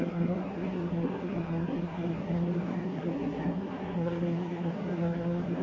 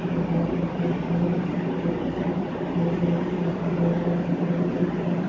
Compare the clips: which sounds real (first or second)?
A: second